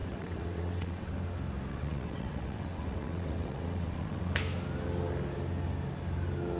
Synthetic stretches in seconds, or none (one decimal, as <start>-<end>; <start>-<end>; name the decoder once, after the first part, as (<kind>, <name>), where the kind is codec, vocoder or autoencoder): 0.0-1.1 (vocoder, WaveNeXt); 1.7-4.3